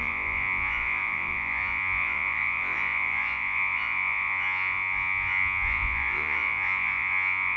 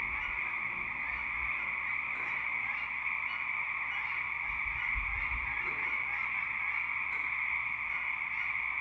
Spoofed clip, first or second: first